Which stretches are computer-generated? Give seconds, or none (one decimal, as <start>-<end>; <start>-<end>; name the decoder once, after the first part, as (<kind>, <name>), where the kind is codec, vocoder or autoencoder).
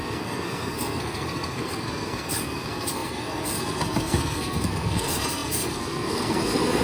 0.0-6.8 (codec, SNAC)